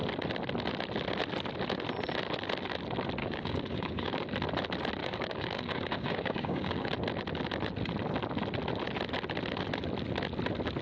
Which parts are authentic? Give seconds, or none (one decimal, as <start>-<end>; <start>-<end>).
0.0-3.2; 4.1-5.0; 6.9-10.8